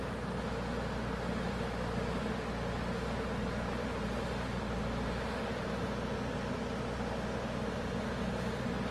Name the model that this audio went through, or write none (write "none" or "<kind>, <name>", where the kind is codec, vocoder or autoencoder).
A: none